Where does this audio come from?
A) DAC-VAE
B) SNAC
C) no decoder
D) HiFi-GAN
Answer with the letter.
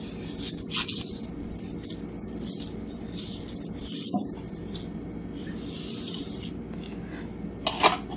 C